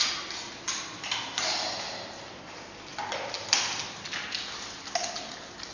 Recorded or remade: recorded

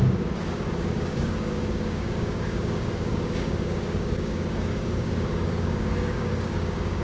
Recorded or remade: remade